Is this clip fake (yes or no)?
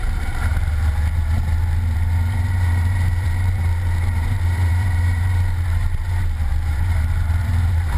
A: yes